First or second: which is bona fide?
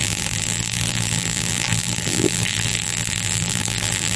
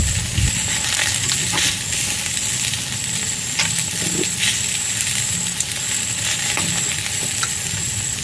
second